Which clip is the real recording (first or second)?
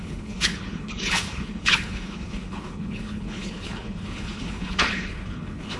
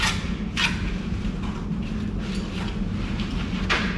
second